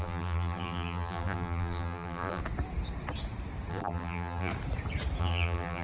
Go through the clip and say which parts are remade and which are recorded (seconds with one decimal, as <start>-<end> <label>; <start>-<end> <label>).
0.0-2.4 remade; 2.4-3.7 recorded; 3.7-4.5 remade; 4.5-5.2 recorded; 5.2-5.8 remade

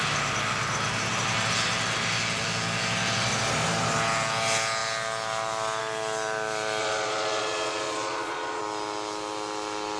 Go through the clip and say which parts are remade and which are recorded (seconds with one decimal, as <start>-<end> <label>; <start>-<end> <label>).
0.0-6.8 recorded; 6.8-8.6 remade; 8.6-10.0 recorded

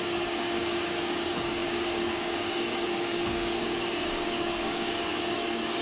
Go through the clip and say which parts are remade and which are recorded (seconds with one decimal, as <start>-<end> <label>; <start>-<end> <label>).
0.0-5.8 remade